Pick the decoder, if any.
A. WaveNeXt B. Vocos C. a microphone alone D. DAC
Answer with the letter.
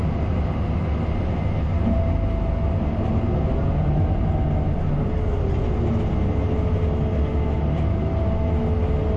C